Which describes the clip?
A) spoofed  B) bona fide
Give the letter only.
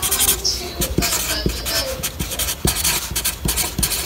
B